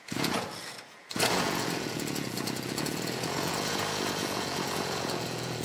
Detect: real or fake fake